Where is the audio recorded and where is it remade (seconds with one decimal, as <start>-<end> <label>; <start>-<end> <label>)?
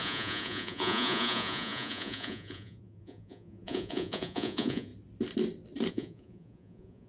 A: 0.0-4.9 remade; 4.9-5.9 recorded; 5.9-7.1 remade